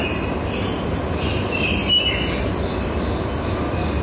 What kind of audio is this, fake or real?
real